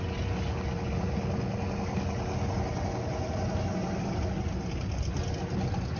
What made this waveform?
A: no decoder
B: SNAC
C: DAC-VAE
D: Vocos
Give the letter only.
A